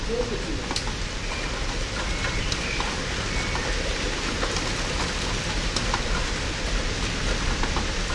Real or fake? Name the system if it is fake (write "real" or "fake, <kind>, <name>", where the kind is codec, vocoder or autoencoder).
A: real